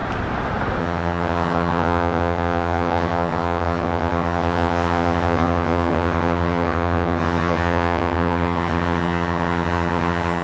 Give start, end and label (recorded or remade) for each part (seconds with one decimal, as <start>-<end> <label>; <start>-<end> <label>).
0.0-0.8 recorded; 0.8-10.4 remade